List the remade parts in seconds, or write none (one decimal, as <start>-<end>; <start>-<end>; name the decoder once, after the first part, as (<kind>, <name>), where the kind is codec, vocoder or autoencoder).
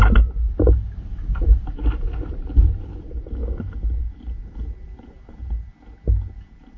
0.0-3.4 (vocoder, BigVGAN v2); 4.0-5.7; 6.3-6.8